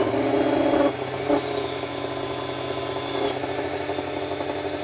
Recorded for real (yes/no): yes